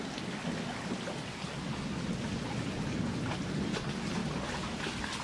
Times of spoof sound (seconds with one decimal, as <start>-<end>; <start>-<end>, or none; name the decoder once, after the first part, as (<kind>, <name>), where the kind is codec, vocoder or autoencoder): none